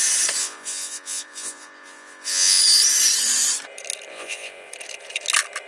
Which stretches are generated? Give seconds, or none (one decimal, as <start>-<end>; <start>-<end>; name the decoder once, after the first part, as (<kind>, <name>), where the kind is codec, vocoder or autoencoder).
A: 0.4-2.6 (vocoder, Vocos); 4.1-4.7